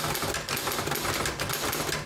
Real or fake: real